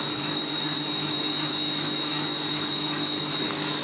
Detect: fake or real fake